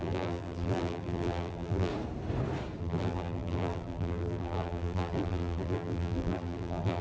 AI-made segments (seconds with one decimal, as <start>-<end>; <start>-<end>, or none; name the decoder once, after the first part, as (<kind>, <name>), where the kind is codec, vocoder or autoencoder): 0.0-1.9 (vocoder, BigVGAN v2); 2.8-7.0